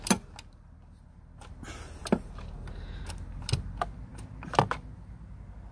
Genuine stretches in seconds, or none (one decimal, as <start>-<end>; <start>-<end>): 0.0-5.7